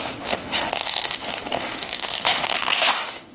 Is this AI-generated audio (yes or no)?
yes